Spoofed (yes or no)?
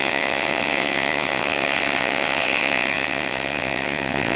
yes